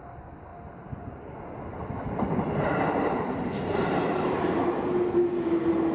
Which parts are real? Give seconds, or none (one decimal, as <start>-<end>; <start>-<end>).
0.0-5.9